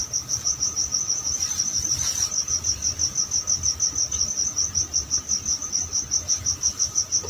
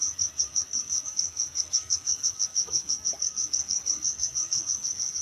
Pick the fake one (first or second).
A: second